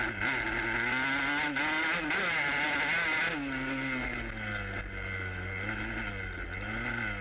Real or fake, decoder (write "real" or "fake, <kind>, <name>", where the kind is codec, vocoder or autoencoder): real